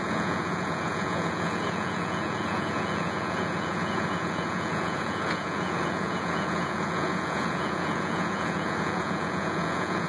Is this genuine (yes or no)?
no